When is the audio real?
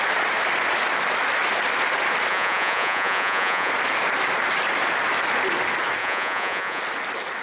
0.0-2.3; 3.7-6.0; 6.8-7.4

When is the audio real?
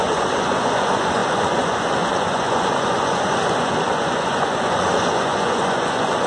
none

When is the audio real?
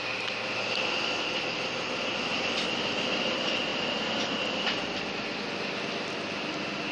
0.0-6.9